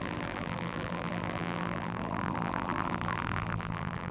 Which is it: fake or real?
fake